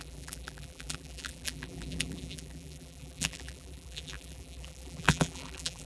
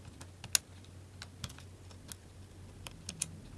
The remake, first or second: first